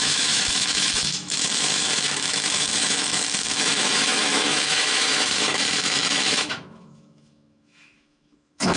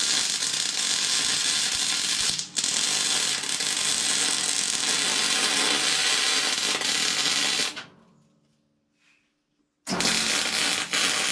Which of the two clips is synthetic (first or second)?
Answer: first